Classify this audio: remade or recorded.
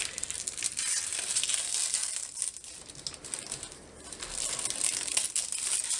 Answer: recorded